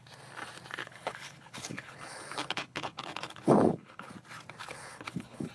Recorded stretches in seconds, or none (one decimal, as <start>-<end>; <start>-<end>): 0.0-0.8; 4.1-4.6